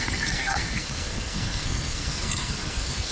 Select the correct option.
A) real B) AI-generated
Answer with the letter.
B